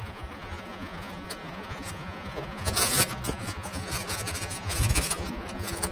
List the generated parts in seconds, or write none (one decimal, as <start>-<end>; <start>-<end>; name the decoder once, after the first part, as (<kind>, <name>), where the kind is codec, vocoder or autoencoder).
0.0-5.9 (vocoder, Vocos)